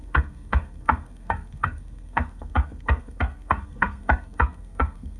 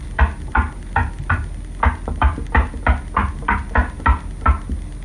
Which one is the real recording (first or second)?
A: second